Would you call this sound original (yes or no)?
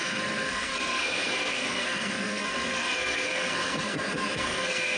no